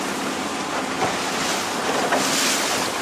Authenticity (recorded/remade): remade